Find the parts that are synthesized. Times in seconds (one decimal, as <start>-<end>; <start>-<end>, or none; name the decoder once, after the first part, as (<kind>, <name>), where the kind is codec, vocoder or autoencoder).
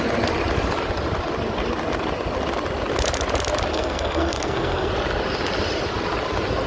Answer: 3.7-4.9 (codec, SNAC)